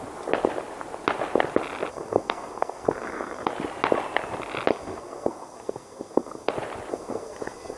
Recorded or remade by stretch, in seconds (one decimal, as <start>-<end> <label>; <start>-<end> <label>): 0.0-1.9 recorded; 1.9-3.5 remade; 3.5-4.7 recorded; 4.7-6.5 remade; 6.5-6.9 recorded; 6.9-7.8 remade